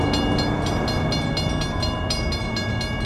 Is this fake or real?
real